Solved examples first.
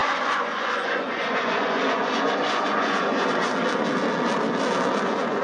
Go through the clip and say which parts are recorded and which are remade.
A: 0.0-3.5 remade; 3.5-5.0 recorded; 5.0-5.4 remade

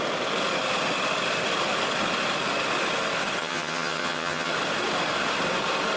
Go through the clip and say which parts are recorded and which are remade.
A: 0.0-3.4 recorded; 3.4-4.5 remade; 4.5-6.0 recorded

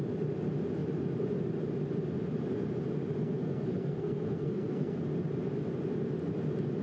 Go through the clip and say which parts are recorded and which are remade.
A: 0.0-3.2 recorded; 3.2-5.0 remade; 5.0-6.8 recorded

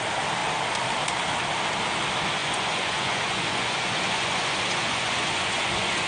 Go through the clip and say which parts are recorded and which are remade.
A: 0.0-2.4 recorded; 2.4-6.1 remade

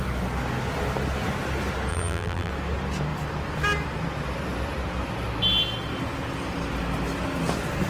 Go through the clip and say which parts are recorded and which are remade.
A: 0.0-1.9 recorded; 1.9-2.5 remade; 2.5-7.9 recorded